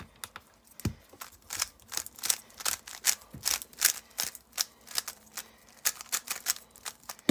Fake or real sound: real